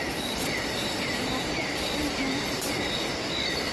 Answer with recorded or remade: recorded